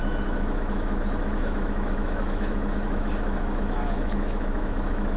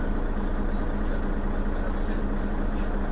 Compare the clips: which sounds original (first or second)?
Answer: second